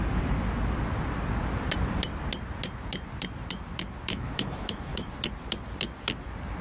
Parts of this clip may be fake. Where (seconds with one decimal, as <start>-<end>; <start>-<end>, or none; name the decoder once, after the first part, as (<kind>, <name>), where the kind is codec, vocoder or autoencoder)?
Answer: 4.1-5.1 (autoencoder, DAC-VAE)